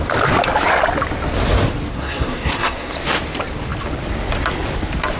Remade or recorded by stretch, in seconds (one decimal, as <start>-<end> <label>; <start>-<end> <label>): 0.0-1.9 recorded; 1.9-2.9 remade; 2.9-5.2 recorded